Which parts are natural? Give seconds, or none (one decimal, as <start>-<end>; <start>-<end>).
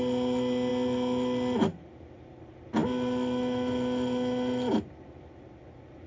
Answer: 0.0-6.1